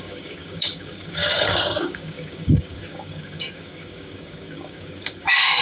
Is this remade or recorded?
remade